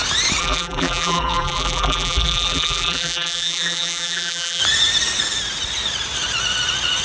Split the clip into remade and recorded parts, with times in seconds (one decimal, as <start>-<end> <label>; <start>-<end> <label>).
0.0-0.4 recorded; 0.4-4.6 remade; 4.6-7.0 recorded